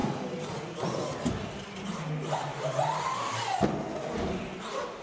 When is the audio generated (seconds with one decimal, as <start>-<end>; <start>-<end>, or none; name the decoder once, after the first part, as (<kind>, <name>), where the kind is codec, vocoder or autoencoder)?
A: none